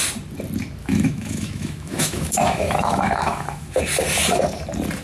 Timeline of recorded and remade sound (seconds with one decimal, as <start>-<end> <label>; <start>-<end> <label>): 0.0-0.8 recorded; 0.8-3.8 remade; 3.8-5.0 recorded